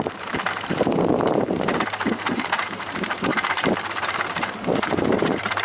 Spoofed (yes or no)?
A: yes